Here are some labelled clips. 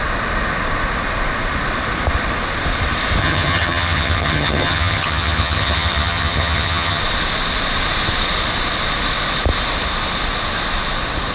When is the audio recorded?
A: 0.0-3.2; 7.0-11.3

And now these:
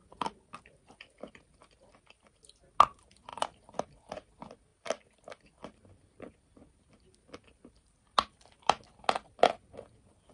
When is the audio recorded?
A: 0.0-4.7; 6.7-10.3

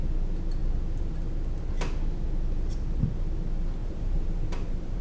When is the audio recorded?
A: 0.0-3.8

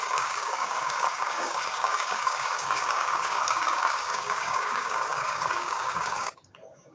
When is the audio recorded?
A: none

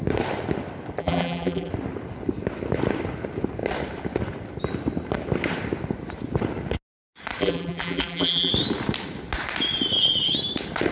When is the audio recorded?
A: 0.0-1.0; 1.7-7.4; 8.5-10.9